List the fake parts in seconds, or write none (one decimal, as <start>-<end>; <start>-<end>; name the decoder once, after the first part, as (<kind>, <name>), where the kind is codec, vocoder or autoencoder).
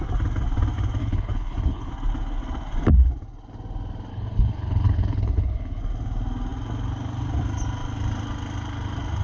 1.0-1.9 (codec, HILCodec); 4.1-5.8